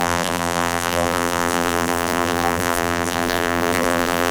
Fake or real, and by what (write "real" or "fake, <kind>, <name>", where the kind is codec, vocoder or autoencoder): fake, vocoder, BigVGAN v2